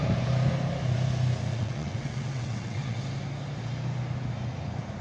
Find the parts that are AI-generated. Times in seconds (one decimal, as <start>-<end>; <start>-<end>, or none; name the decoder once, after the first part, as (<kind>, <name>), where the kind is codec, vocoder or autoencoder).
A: 1.5-3.0 (vocoder, WaveNeXt)